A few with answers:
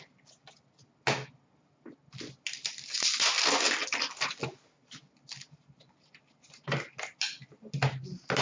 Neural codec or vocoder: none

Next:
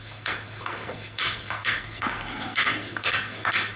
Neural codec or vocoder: codec, SNAC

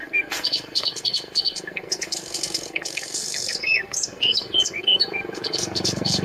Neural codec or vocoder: codec, SNAC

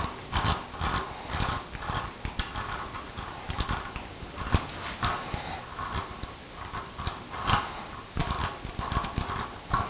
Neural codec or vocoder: none